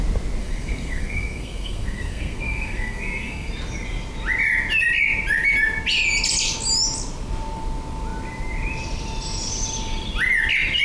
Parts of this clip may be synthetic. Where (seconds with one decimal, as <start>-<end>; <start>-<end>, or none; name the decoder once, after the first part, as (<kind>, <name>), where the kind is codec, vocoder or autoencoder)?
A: 0.4-3.5 (codec, SNAC)